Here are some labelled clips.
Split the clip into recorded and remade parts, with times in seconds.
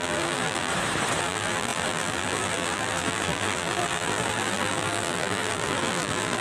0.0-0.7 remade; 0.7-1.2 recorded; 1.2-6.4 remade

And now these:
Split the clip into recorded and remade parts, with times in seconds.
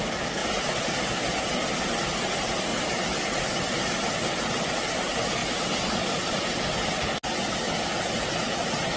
0.0-9.0 recorded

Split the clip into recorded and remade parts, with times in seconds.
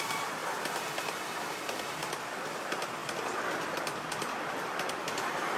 0.0-0.4 recorded; 0.4-1.8 remade; 1.8-3.0 recorded; 3.0-4.9 remade; 4.9-5.6 recorded